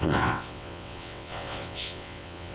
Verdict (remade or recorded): remade